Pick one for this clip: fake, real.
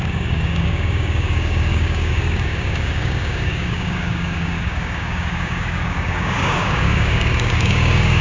fake